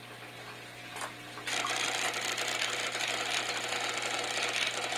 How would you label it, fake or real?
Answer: real